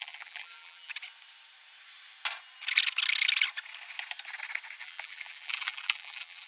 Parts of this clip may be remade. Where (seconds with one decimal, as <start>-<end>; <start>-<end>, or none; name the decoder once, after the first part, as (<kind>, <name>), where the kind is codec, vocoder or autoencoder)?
0.0-0.9 (vocoder, BigVGAN v2); 4.8-6.5